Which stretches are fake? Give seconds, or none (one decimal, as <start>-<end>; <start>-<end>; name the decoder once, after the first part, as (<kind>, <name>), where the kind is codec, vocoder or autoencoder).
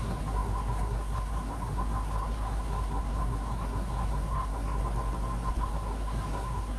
0.0-4.8 (codec, SNAC); 5.5-6.8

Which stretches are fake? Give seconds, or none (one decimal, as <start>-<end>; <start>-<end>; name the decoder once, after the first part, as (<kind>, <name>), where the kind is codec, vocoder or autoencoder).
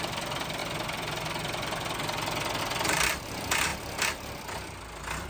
0.0-0.6 (vocoder, BigVGAN v2); 2.6-3.7